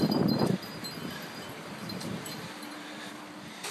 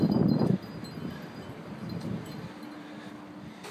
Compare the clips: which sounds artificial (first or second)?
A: first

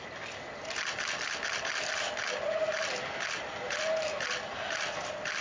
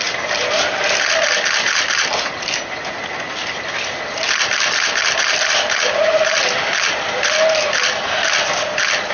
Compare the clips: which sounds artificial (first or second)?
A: second